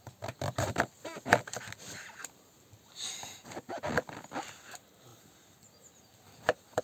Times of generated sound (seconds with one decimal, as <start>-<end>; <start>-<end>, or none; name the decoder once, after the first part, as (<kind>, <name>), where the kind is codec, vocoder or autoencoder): none